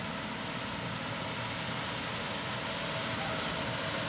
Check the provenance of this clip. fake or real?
real